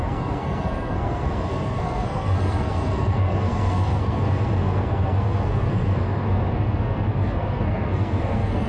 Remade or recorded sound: remade